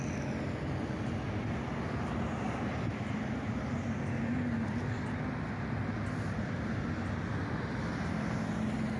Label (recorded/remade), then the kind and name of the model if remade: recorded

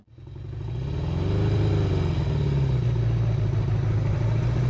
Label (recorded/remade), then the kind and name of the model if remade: recorded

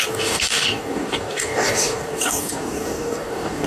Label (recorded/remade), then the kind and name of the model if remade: remade, codec, DAC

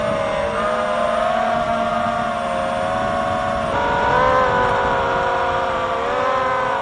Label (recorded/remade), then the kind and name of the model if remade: recorded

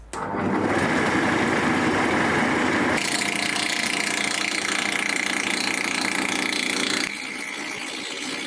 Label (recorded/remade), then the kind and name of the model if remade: recorded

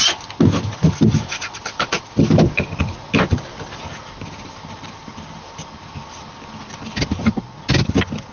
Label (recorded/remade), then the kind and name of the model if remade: recorded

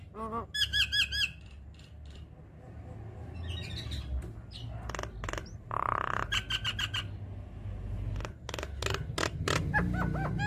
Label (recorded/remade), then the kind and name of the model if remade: recorded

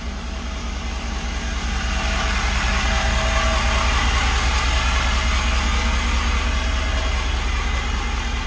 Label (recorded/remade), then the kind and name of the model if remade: recorded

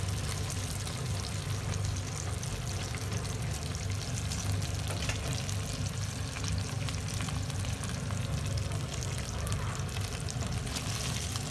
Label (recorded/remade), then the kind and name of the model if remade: recorded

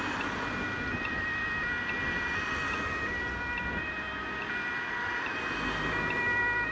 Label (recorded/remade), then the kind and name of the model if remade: recorded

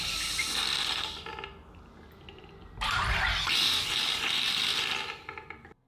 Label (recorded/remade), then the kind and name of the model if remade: recorded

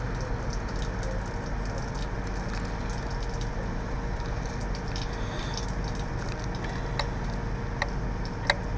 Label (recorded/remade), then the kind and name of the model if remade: recorded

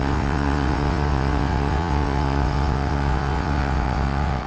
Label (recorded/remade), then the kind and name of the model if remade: remade, vocoder, WaveNeXt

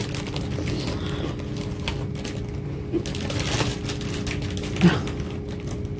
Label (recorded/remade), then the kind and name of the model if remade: recorded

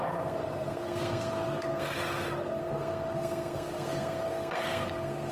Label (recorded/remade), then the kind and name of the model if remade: remade, codec, SNAC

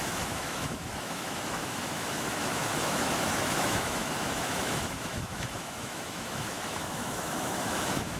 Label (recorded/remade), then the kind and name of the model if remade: remade, autoencoder, DAC-VAE